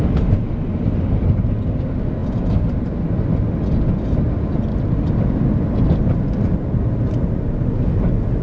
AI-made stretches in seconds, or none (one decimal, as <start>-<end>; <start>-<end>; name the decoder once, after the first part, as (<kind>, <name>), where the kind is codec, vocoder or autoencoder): none